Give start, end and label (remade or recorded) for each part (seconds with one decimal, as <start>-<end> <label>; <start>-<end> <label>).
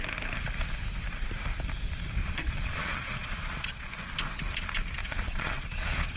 0.0-2.2 recorded; 2.2-3.9 remade; 3.9-5.0 recorded; 5.0-6.2 remade